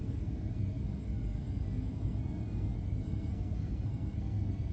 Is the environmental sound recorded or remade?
remade